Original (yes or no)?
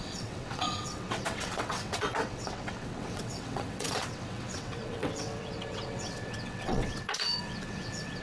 no